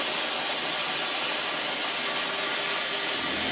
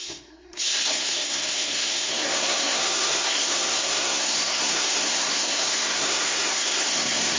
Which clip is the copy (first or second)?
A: second